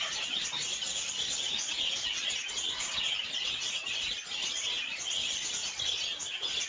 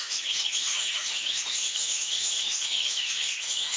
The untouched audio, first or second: first